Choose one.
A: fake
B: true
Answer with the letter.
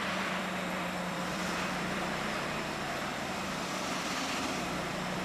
A